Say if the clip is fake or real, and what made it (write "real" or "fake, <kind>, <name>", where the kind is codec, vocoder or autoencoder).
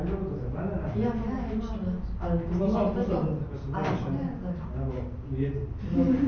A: real